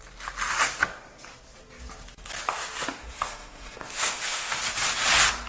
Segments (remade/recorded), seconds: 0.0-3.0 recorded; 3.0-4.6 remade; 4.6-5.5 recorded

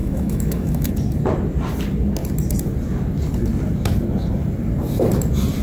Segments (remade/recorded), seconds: 0.0-0.9 remade; 0.9-5.6 recorded

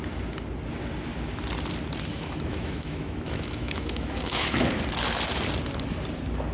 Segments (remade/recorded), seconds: 0.0-2.1 recorded; 2.1-4.7 remade; 4.7-6.5 recorded